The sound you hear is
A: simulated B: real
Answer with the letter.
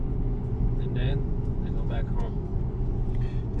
A